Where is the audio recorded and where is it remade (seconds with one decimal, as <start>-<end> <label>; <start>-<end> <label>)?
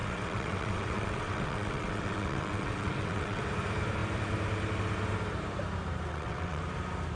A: 0.0-3.4 remade; 3.4-6.1 recorded; 6.1-6.6 remade; 6.6-7.2 recorded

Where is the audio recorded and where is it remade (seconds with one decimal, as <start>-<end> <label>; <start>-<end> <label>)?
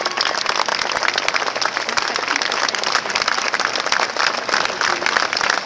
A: 0.0-5.7 recorded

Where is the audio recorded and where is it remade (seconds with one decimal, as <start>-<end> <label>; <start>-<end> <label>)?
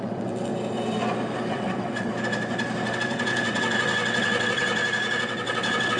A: 0.0-0.5 remade; 0.5-1.5 recorded; 1.5-2.1 remade; 2.1-2.9 recorded; 2.9-4.7 remade; 4.7-5.2 recorded; 5.2-6.0 remade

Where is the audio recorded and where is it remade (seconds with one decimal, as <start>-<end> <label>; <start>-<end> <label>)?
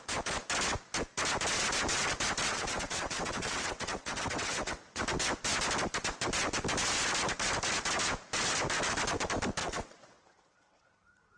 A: 0.0-2.5 recorded; 2.5-5.0 remade; 5.0-9.6 recorded; 9.6-10.9 remade; 10.9-11.4 recorded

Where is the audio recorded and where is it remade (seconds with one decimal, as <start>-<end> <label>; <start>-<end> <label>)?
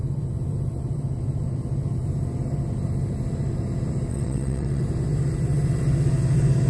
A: 0.0-4.1 recorded; 4.1-4.8 remade; 4.8-6.7 recorded